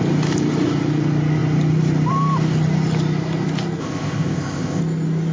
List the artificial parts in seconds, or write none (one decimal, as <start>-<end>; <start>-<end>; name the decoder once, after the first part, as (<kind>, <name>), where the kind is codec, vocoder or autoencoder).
3.8-4.8 (codec, ZipCodec)